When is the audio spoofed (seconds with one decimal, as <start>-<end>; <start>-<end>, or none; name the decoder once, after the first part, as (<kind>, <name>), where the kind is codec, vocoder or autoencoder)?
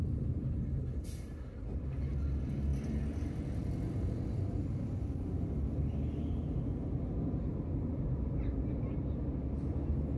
none